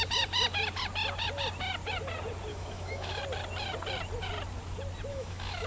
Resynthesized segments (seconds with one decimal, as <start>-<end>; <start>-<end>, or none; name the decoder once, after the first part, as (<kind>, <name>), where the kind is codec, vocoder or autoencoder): 2.5-3.2 (autoencoder, DAC-VAE); 5.1-5.7